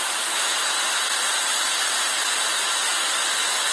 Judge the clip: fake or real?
real